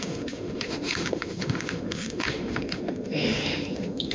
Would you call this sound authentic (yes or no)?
no